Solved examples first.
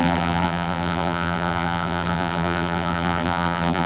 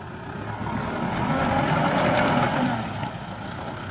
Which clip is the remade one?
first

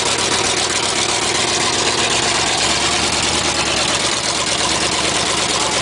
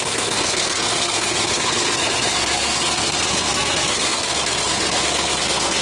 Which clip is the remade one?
second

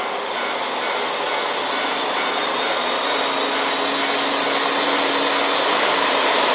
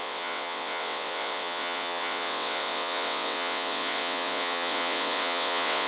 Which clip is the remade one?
second